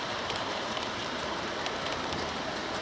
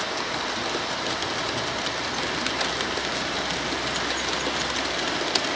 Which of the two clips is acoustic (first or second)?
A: second